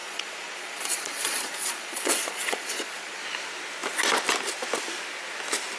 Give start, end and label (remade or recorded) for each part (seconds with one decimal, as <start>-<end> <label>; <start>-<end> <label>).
0.0-3.2 remade; 3.2-5.8 recorded